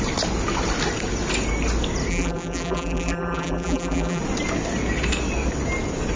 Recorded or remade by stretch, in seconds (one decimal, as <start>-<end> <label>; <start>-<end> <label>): 0.0-2.1 recorded; 2.1-4.2 remade; 4.2-6.2 recorded